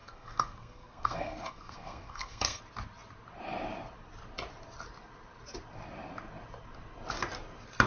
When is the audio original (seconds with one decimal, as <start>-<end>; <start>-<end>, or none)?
2.6-7.9